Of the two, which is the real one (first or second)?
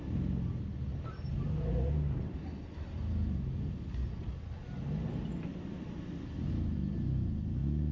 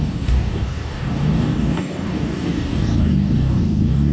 first